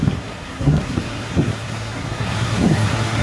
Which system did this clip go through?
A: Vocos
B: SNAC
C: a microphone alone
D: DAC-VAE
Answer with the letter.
B